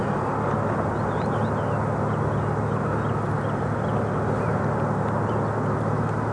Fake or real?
real